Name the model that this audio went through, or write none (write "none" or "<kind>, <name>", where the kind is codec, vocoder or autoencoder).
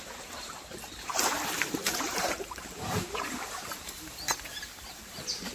vocoder, BigVGAN v2